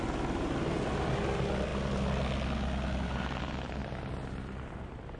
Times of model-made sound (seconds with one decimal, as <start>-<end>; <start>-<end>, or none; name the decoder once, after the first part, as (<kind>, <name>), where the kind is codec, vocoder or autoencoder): none